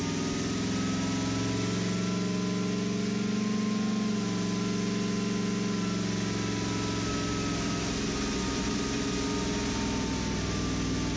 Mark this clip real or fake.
real